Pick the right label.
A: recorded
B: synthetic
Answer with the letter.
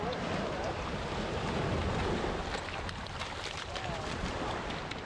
A